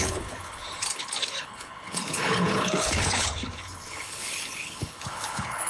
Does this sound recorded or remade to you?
remade